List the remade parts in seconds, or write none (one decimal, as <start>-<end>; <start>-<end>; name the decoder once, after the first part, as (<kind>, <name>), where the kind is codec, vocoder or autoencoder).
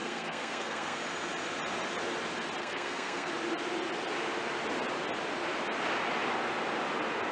0.0-1.0 (codec, SNAC); 2.6-3.3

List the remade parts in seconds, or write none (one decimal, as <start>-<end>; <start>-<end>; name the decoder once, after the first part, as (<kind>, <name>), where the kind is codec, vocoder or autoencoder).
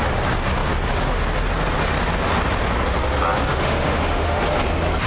3.5-4.4 (autoencoder, DAC-VAE)